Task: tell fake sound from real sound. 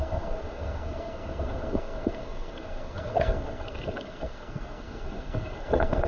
fake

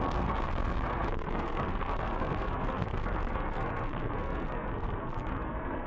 fake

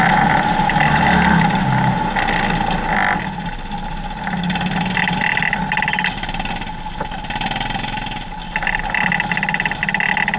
real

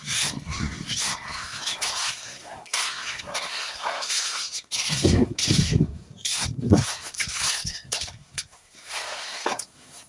fake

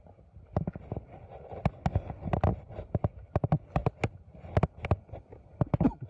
real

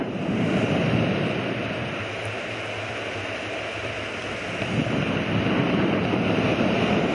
real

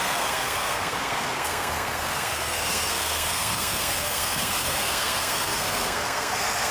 fake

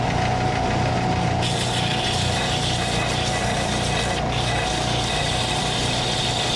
real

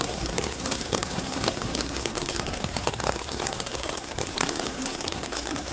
fake